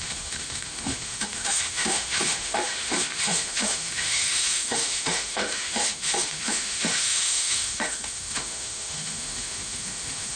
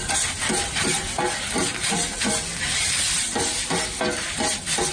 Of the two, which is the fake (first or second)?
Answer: first